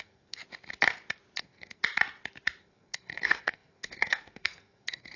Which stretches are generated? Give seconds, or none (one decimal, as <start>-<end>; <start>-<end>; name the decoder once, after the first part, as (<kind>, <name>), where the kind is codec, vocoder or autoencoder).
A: 0.0-0.4 (codec, SNAC); 1.4-1.8; 2.6-5.2